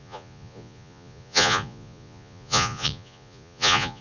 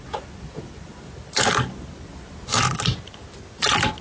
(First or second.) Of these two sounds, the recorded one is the second